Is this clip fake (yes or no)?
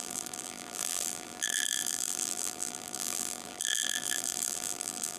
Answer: yes